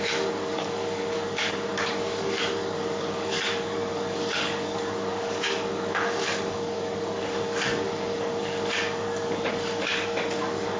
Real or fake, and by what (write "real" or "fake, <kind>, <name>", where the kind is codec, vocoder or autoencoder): fake, codec, DAC